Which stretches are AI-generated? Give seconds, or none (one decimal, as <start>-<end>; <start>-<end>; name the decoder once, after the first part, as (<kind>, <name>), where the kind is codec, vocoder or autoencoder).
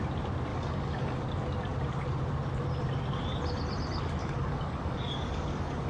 0.5-1.2 (codec, DAC); 4.2-5.9